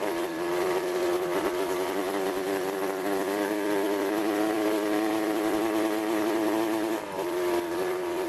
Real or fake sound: fake